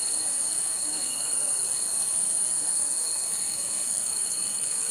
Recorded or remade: remade